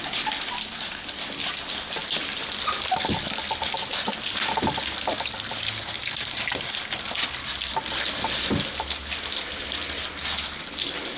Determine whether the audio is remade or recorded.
recorded